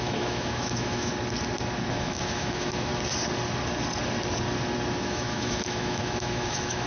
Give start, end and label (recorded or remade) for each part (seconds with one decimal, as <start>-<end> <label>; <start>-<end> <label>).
0.0-1.1 remade; 1.1-1.9 recorded; 1.9-2.9 remade; 2.9-5.0 recorded; 5.0-6.9 remade